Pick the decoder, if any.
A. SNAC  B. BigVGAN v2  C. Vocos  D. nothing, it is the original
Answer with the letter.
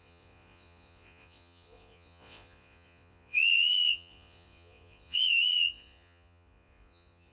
C